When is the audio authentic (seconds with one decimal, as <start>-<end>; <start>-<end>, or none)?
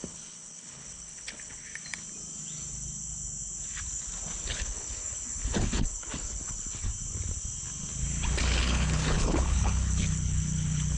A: 1.7-4.4; 6.9-8.6